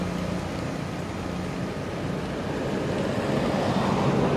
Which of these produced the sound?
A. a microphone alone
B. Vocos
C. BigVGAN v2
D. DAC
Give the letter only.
A